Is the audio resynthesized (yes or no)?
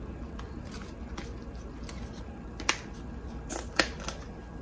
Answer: no